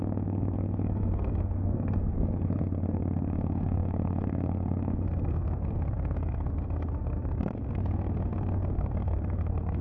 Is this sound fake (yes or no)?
yes